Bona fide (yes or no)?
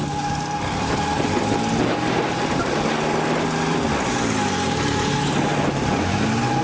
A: yes